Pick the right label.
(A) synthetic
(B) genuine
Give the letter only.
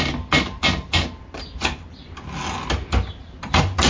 B